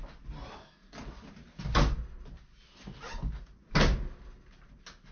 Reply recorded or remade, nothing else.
recorded